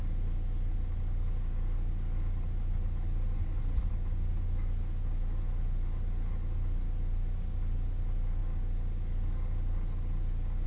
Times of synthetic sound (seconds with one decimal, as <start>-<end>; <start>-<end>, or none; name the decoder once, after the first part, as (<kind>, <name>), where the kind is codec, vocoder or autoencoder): none